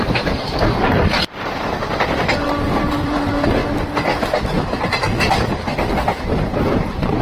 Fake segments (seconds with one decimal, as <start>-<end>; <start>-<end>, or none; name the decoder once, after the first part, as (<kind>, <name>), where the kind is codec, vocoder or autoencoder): 0.0-3.6 (vocoder, BigVGAN v2); 6.2-7.2